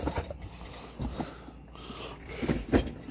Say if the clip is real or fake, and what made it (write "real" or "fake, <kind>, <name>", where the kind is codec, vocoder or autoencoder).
real